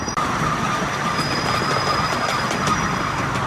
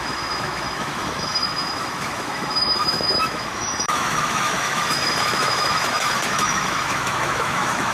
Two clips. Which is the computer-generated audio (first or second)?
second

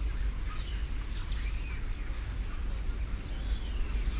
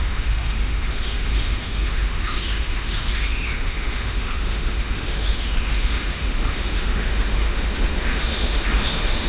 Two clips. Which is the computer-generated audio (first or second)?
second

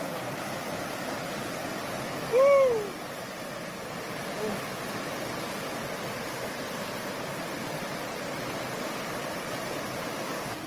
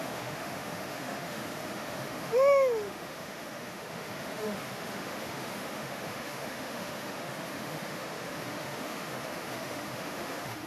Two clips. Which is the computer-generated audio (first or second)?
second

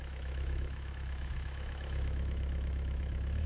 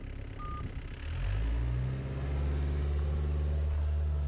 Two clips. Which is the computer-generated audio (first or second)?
first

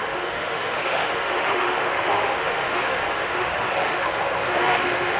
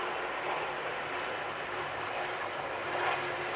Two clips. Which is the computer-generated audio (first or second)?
first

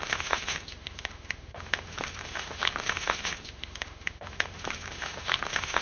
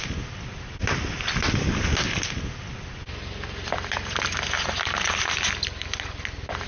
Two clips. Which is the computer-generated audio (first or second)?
first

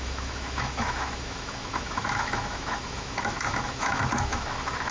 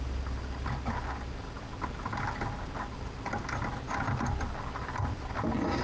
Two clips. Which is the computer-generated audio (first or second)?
first